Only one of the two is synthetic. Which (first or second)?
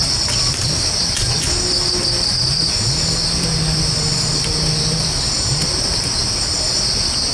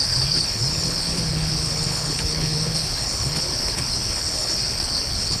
second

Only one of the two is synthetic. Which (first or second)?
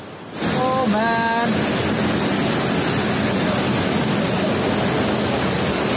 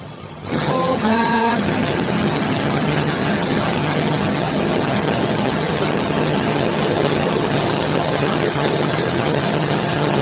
second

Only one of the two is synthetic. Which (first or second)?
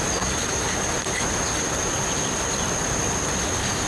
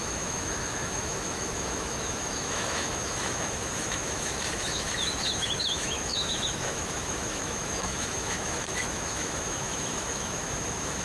second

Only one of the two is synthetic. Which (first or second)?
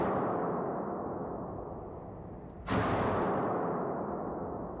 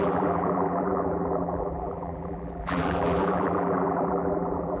second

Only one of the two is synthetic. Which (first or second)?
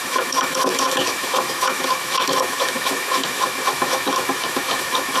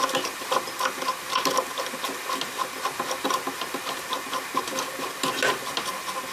first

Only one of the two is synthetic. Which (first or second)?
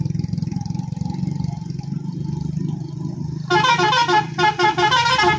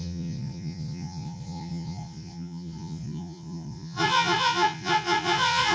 second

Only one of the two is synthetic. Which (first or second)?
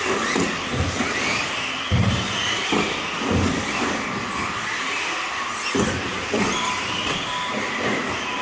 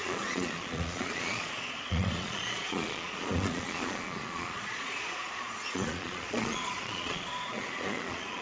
second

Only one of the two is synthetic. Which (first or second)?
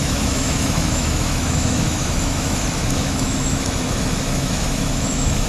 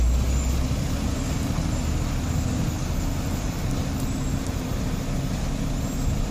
first